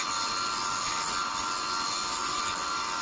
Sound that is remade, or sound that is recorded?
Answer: recorded